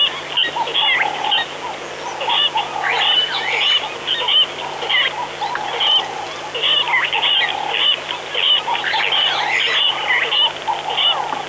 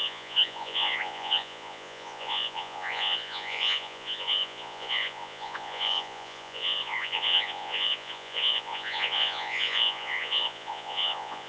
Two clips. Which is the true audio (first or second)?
first